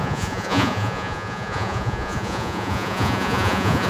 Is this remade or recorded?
remade